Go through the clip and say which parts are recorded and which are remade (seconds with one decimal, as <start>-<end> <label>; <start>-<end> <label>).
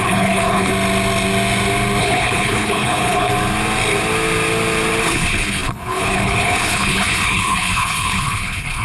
0.0-0.7 remade; 0.7-2.0 recorded; 2.0-3.3 remade; 3.3-5.0 recorded; 5.0-8.8 remade